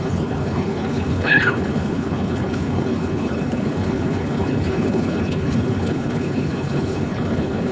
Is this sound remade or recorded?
remade